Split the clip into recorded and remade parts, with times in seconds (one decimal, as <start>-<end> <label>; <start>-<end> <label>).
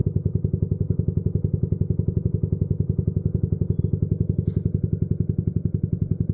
0.0-6.3 recorded